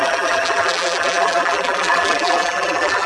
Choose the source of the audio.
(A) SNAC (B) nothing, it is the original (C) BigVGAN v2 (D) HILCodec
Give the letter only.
C